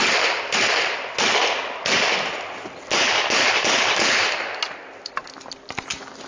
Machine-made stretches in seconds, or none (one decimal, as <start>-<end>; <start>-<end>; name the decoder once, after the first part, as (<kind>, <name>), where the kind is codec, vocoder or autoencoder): none